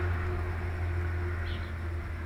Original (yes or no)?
yes